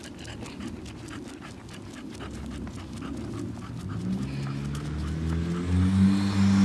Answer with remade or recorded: recorded